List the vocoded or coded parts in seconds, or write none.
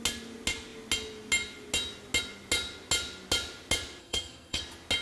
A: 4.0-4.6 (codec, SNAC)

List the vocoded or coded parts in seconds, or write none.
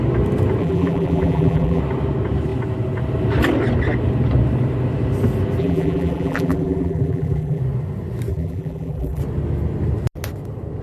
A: 0.6-1.8 (vocoder, BigVGAN v2); 5.6-7.6; 8.3-9.2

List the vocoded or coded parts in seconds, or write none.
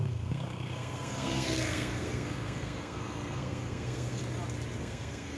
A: 0.0-4.2 (codec, SNAC); 4.8-5.4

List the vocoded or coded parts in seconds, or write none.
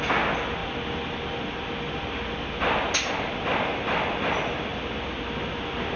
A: none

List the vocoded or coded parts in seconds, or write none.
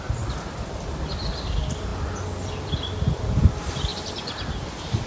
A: none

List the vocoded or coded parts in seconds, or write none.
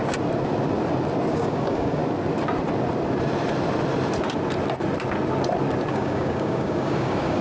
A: 1.3-2.0 (codec, DAC); 5.9-7.4